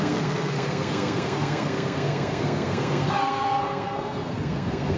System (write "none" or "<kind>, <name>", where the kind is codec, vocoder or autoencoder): codec, SNAC